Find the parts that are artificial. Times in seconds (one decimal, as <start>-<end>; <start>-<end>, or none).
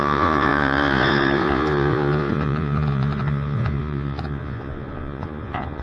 0.0-5.8